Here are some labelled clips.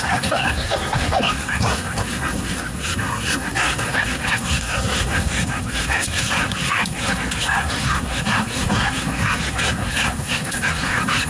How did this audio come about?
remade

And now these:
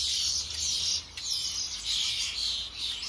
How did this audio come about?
recorded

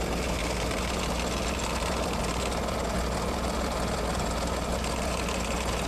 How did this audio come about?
recorded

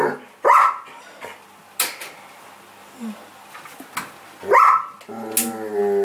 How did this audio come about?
recorded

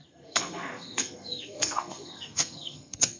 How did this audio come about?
remade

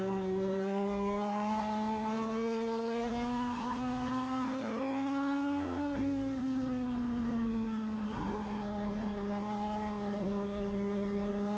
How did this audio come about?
remade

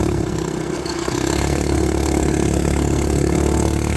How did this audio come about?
remade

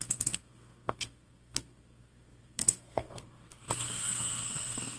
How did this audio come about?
remade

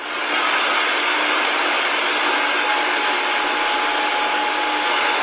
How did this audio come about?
recorded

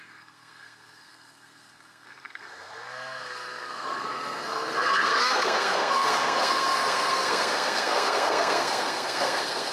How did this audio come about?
remade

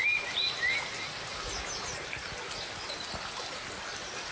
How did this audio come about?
recorded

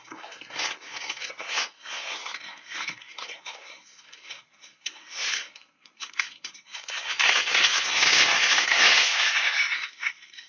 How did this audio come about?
remade